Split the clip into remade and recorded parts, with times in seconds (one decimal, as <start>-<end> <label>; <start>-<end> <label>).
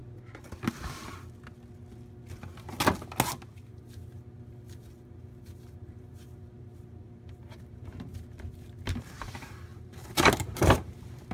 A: 0.0-3.5 recorded; 3.5-11.3 remade